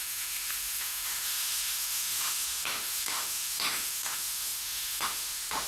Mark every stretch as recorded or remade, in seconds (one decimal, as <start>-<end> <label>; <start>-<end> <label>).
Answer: 0.0-5.7 remade